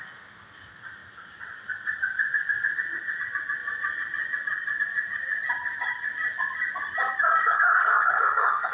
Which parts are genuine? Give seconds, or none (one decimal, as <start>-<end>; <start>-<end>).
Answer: 0.0-7.3